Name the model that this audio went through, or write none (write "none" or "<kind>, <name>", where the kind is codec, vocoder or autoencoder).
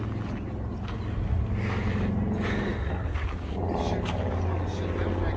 none